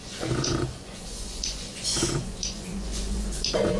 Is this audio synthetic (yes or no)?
yes